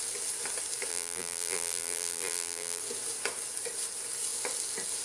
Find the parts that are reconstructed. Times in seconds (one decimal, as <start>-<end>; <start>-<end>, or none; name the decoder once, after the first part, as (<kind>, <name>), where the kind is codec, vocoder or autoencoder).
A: 0.9-2.8 (vocoder, BigVGAN v2)